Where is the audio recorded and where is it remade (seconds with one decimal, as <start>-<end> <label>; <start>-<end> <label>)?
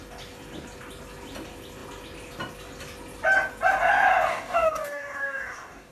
0.0-4.3 recorded; 4.3-5.9 remade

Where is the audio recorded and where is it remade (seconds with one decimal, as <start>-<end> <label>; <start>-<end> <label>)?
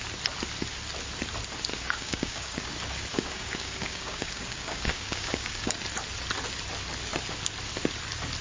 0.0-1.7 recorded; 1.7-2.7 remade; 2.7-3.1 recorded; 3.1-5.7 remade; 5.7-8.4 recorded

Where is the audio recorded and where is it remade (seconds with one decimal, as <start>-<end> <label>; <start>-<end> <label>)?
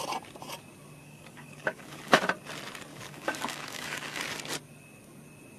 0.0-1.0 recorded; 1.0-2.2 remade; 2.2-2.9 recorded; 2.9-4.2 remade; 4.2-5.6 recorded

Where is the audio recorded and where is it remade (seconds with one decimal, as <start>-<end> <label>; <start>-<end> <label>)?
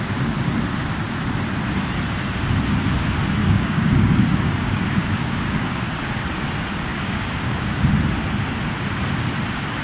0.0-3.4 recorded; 3.4-5.9 remade; 5.9-6.9 recorded; 6.9-7.9 remade; 7.9-9.8 recorded